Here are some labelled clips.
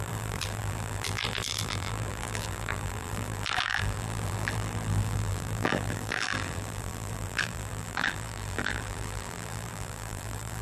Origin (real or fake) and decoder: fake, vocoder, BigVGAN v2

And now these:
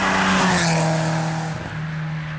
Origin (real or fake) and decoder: real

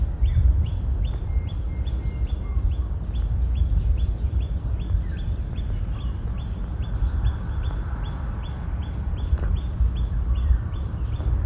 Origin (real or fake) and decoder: real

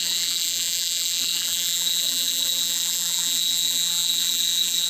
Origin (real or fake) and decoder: fake, vocoder, BigVGAN v2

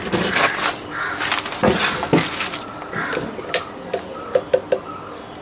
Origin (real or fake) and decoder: fake, vocoder, BigVGAN v2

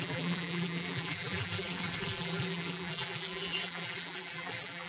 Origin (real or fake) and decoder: fake, vocoder, BigVGAN v2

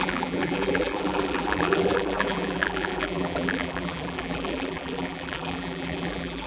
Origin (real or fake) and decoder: fake, vocoder, BigVGAN v2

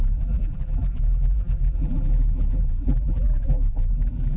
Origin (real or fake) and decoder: fake, vocoder, BigVGAN v2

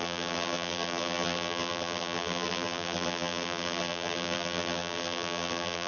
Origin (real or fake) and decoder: fake, vocoder, BigVGAN v2